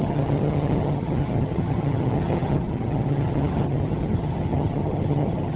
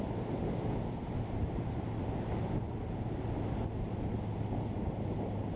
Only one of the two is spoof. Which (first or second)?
first